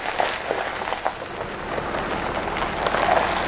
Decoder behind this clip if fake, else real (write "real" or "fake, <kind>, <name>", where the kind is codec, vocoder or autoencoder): real